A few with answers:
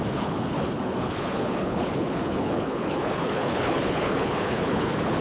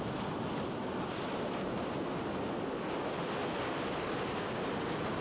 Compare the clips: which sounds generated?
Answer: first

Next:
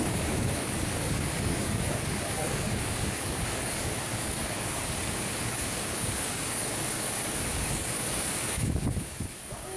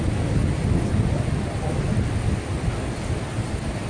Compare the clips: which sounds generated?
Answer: first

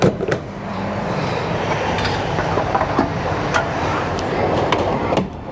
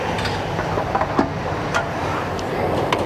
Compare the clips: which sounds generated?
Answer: first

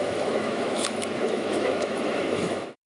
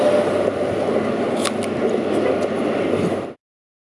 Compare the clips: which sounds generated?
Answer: first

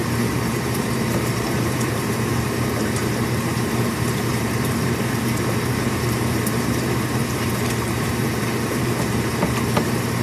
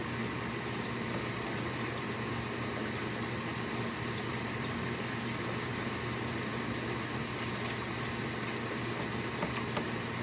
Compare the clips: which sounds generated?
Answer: first